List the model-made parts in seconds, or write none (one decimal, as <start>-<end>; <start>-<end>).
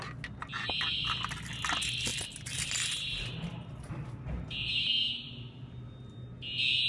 none